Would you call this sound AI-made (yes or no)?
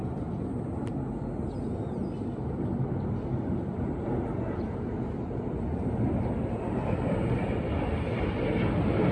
no